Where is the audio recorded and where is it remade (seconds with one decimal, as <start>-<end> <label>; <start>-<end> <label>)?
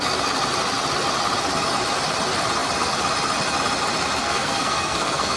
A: 0.0-4.2 recorded; 4.2-5.4 remade